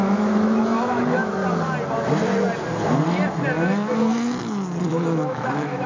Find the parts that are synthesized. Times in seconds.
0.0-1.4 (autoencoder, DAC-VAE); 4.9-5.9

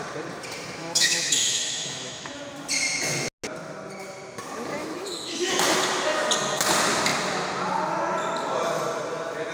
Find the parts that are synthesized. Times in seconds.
0.8-2.4 (autoencoder, DAC-VAE); 4.8-5.5

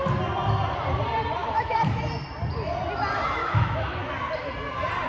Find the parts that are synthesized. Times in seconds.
1.4-2.0 (autoencoder, DAC-VAE); 3.4-4.1

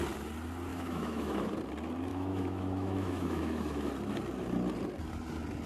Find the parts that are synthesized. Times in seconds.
0.7-1.5 (autoencoder, DAC-VAE); 2.1-3.9

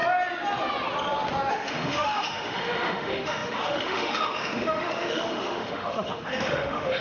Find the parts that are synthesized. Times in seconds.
1.5-7.0 (autoencoder, DAC-VAE)

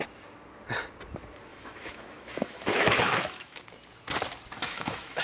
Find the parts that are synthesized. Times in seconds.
1.5-3.6 (autoencoder, DAC-VAE); 4.6-5.2

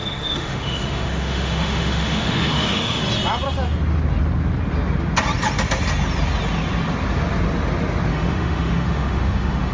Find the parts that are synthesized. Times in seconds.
0.0-3.0 (autoencoder, DAC-VAE); 8.1-9.7